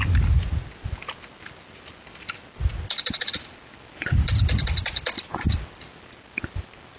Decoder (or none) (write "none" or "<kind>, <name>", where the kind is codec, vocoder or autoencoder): none